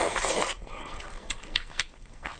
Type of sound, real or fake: fake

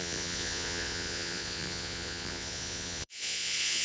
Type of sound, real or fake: fake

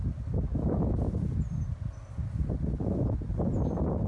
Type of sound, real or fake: real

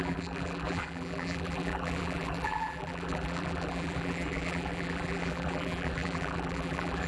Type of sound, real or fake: fake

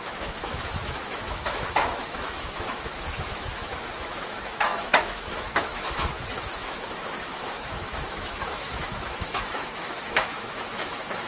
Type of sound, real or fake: fake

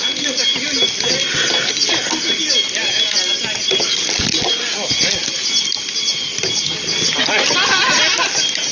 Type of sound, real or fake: real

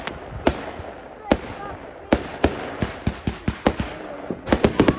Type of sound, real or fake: real